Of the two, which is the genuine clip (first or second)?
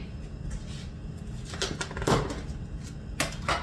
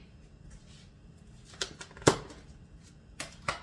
first